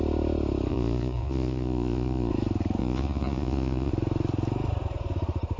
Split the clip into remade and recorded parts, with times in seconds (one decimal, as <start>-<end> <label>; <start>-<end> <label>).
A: 0.0-0.7 recorded; 0.7-2.3 remade; 2.3-2.8 recorded; 2.8-3.9 remade; 3.9-5.6 recorded